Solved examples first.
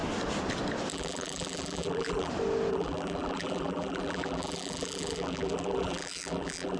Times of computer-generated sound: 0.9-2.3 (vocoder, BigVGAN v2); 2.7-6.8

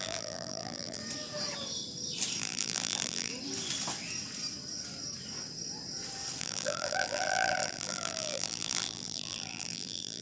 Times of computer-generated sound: 0.0-1.0 (vocoder, BigVGAN v2); 2.4-3.3; 6.4-10.2

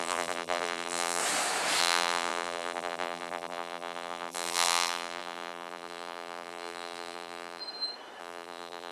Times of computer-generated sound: 0.0-1.2 (vocoder, BigVGAN v2); 1.8-7.6; 8.2-8.9

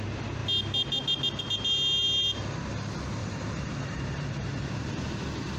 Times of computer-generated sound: 3.2-4.9 (vocoder, BigVGAN v2)

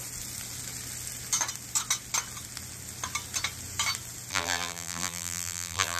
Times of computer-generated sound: 4.3-6.0 (vocoder, BigVGAN v2)

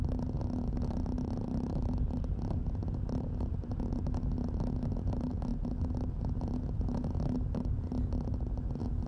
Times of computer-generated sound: none